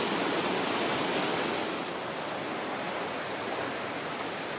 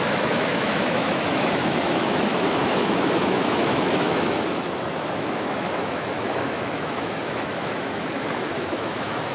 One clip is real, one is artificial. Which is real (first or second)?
first